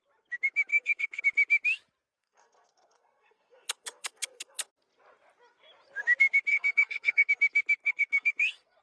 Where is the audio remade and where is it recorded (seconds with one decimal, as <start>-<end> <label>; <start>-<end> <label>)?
0.0-0.7 recorded; 0.7-1.2 remade; 1.2-2.2 recorded; 2.2-4.7 remade; 4.7-6.5 recorded; 6.5-7.3 remade; 7.3-7.8 recorded; 7.8-8.8 remade